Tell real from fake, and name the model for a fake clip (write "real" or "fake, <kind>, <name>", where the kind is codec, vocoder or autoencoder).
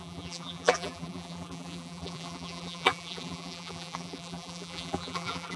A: fake, vocoder, BigVGAN v2